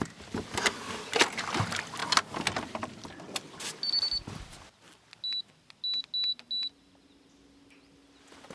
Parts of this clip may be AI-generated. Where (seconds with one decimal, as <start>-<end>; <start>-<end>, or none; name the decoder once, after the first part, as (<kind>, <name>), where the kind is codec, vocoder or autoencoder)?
none